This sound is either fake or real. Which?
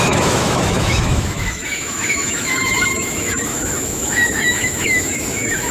fake